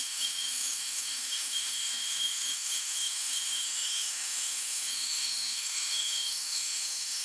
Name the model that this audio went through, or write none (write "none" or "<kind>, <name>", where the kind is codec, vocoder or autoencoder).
autoencoder, DAC-VAE